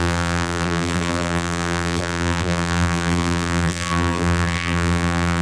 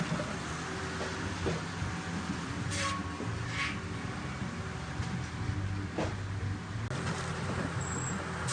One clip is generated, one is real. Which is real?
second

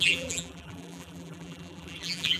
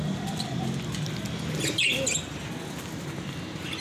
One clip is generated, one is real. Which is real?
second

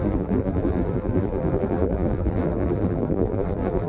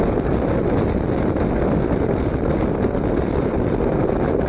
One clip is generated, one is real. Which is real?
second